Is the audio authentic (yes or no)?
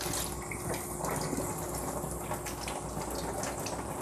yes